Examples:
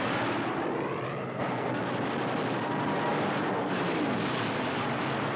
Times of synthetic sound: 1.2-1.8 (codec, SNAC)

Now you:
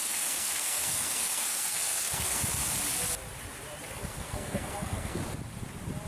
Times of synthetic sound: 0.0-2.6 (codec, SNAC); 3.9-5.2

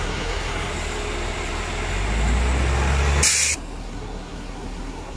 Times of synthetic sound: 0.0-0.7 (codec, SNAC); 3.8-5.2

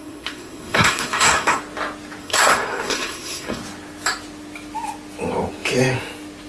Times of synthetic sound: 0.0-1.6 (codec, SNAC); 2.2-3.6

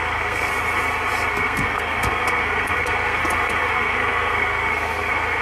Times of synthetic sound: 0.0-0.5 (codec, SNAC); 1.3-3.2; 3.7-5.4